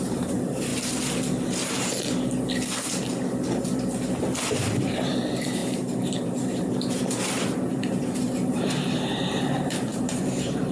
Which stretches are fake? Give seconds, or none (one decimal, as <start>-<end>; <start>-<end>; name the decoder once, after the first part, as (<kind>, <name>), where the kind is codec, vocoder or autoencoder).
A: 0.0-0.7 (vocoder, BigVGAN v2); 4.8-10.7

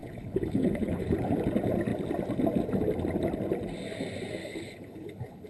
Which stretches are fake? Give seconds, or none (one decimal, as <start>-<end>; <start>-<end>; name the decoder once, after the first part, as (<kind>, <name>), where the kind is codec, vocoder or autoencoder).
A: 0.0-1.4 (codec, HILCodec); 4.4-5.5

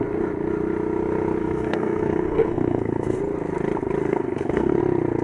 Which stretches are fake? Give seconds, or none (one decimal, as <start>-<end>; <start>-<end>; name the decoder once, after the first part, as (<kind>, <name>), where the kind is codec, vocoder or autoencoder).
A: 1.4-3.2 (codec, SNAC); 4.0-4.8